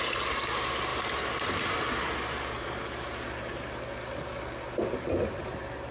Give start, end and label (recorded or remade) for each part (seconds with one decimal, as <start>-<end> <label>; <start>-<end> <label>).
0.0-5.9 recorded